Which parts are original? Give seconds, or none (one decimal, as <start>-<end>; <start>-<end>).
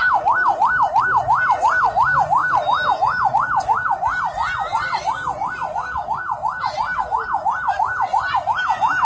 0.0-9.0